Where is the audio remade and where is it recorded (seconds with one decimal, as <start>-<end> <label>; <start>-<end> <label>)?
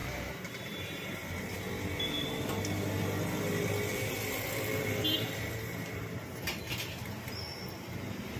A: 0.0-1.6 remade; 1.6-3.9 recorded; 3.9-6.2 remade; 6.2-8.4 recorded